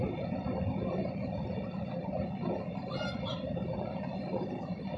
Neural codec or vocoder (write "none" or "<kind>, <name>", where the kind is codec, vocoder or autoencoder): none